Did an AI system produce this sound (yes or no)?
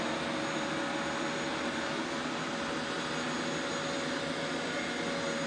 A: no